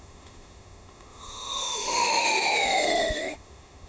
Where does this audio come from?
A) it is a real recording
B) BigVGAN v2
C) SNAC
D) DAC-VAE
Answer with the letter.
D